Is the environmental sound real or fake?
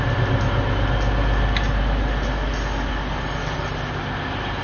real